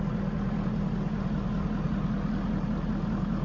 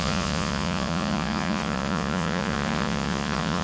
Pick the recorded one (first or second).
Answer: first